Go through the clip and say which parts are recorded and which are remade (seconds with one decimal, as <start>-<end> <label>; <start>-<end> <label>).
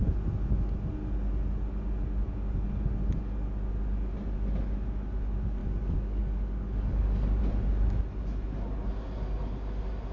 0.0-5.6 recorded; 5.6-7.4 remade; 7.4-10.1 recorded